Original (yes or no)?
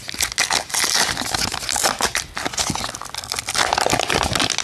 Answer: yes